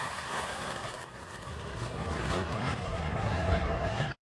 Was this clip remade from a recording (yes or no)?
yes